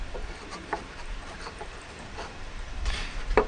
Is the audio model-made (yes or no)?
yes